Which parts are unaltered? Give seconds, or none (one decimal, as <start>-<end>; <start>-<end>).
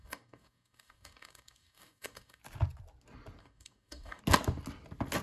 2.4-3.4; 4.2-5.2